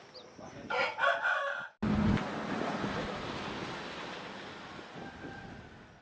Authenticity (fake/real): real